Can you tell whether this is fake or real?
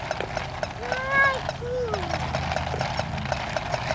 real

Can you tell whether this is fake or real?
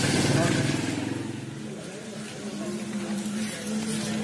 real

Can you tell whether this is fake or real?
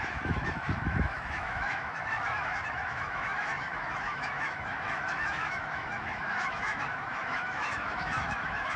fake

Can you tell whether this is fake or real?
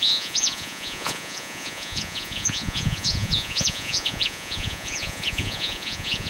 fake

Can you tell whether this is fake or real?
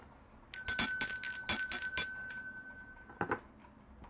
real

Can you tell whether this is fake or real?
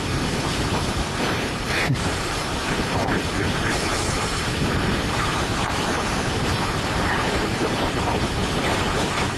fake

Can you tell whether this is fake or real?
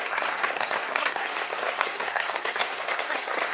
fake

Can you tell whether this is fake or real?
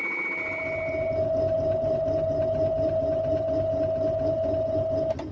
real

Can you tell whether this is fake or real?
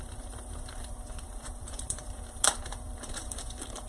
fake